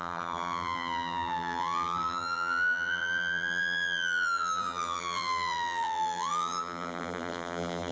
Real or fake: fake